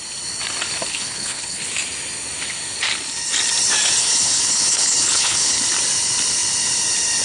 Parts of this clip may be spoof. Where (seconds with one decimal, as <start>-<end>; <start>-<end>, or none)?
0.9-1.7; 4.0-5.6